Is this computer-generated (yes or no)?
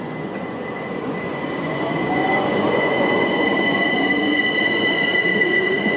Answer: yes